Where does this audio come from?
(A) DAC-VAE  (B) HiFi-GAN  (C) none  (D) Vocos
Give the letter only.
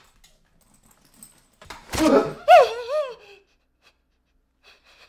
C